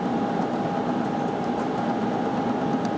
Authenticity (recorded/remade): recorded